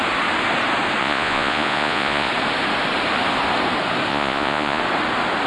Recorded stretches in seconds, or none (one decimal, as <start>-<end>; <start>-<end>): 0.0-1.0; 2.3-4.1; 4.8-5.5